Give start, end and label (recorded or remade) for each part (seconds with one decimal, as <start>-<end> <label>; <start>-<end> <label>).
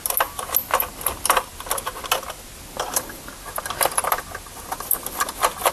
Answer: 0.0-5.7 recorded